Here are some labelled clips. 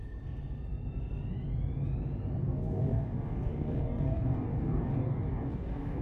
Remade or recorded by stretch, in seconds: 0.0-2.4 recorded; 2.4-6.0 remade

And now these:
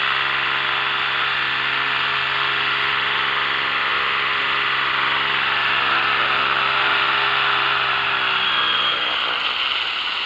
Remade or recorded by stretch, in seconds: 0.0-10.3 recorded

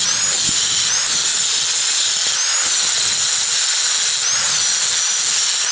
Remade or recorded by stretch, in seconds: 0.0-5.7 recorded

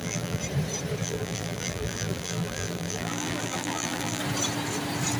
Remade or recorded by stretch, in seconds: 0.0-0.4 remade; 0.4-1.0 recorded; 1.0-4.2 remade; 4.2-5.2 recorded

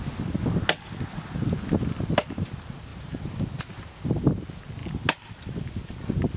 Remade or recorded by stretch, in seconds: 0.0-2.9 recorded; 2.9-3.6 remade; 3.6-6.4 recorded

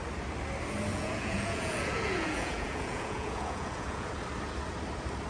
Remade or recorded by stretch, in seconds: 0.0-0.9 recorded; 0.9-4.1 remade; 4.1-5.3 recorded

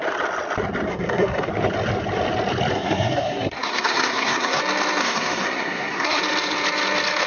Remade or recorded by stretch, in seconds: 0.0-0.9 recorded; 0.9-1.5 remade; 1.5-2.7 recorded; 2.7-4.6 remade; 4.6-5.0 recorded; 5.0-6.2 remade; 6.2-7.3 recorded

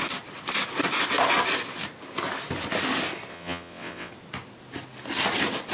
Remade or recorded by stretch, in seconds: 0.0-3.3 recorded; 3.3-4.1 remade; 4.1-5.7 recorded